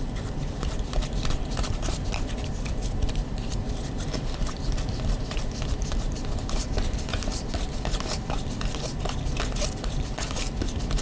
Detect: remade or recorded remade